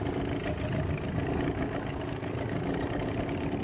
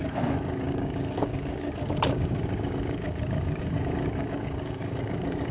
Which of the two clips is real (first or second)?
first